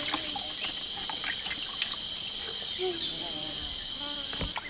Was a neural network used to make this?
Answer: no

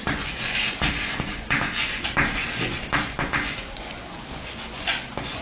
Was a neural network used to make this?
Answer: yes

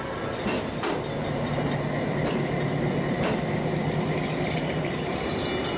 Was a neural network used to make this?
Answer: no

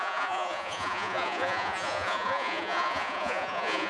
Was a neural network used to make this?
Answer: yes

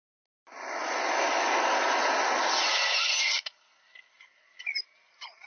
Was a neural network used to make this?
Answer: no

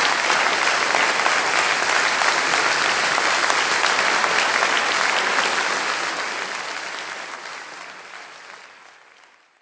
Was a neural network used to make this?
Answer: no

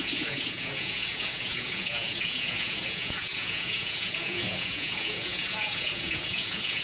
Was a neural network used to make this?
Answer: yes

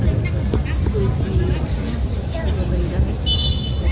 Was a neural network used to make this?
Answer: no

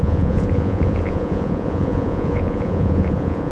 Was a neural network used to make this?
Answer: yes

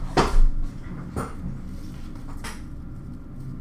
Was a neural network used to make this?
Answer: no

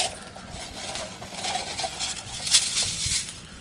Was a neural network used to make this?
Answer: yes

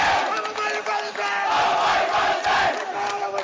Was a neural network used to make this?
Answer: no